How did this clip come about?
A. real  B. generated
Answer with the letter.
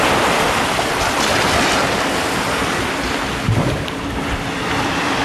A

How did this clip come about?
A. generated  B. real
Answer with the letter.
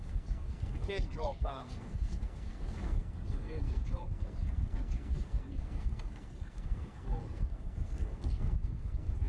A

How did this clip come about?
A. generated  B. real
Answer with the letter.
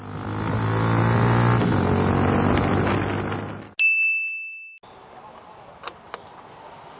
B